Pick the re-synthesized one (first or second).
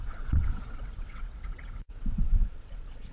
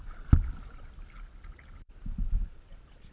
first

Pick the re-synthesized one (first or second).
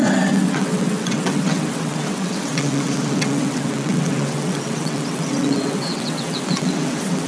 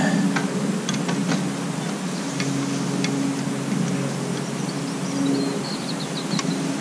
first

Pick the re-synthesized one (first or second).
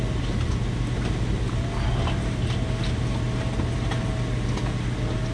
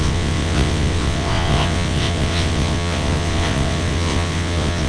second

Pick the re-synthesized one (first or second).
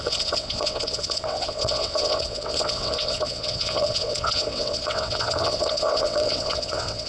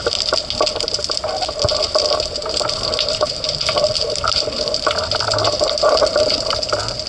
first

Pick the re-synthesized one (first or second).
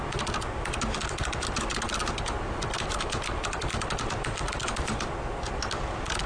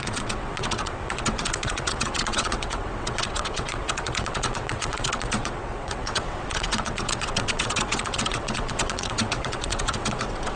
second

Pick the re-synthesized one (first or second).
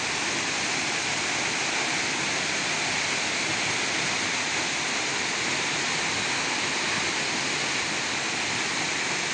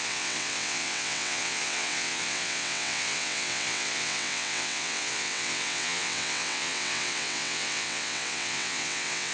second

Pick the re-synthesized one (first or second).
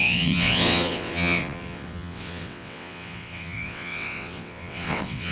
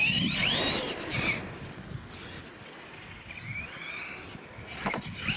first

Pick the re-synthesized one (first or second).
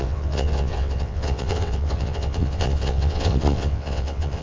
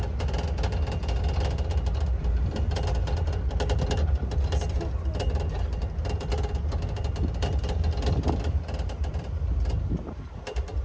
first